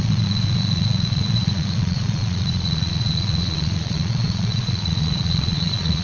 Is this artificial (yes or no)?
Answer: yes